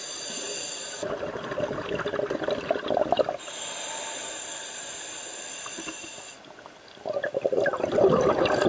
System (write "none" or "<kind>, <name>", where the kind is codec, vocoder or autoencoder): none